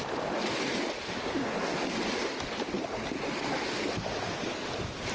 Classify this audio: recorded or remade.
recorded